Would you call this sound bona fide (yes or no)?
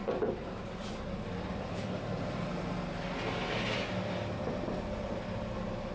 yes